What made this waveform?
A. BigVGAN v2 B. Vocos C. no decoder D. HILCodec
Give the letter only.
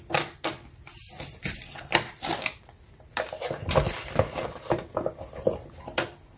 A